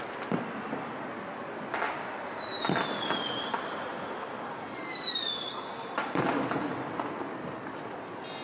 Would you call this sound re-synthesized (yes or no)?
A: no